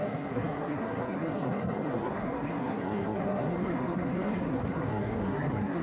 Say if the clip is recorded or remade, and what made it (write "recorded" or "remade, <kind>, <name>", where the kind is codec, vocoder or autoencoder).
remade, codec, SNAC